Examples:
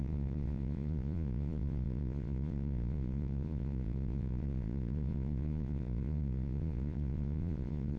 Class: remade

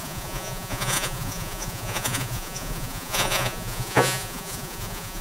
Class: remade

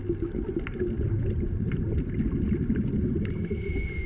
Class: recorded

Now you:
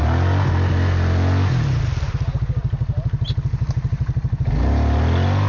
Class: recorded